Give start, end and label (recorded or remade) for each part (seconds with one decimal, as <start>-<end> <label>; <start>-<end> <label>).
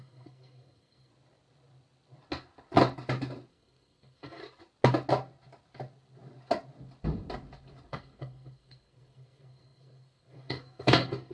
0.0-1.1 remade; 1.1-3.5 recorded; 3.5-4.4 remade; 4.4-7.9 recorded; 7.9-11.3 remade